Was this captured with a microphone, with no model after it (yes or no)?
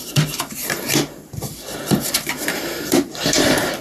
no